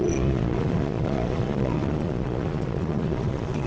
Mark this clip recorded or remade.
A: remade